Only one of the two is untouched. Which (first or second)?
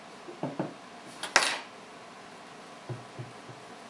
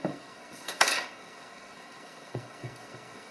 first